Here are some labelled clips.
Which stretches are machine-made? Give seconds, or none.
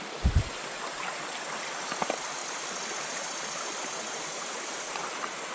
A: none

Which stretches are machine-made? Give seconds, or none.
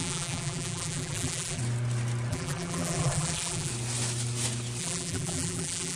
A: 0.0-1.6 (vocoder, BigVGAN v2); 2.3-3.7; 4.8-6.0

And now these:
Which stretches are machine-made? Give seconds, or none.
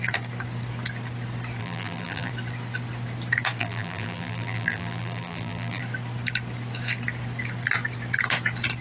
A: 1.6-2.3 (vocoder, BigVGAN v2); 3.6-5.8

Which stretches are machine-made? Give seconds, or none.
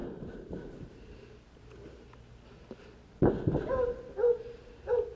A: 0.0-1.3 (vocoder, BigVGAN v2); 2.3-3.3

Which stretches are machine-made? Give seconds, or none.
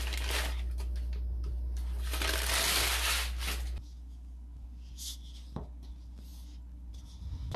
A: none